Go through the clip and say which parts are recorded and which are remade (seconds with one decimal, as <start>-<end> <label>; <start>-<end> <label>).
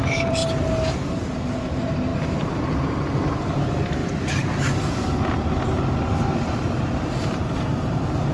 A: 0.0-0.4 remade; 0.4-1.1 recorded; 1.1-4.0 remade; 4.0-7.1 recorded; 7.1-8.3 remade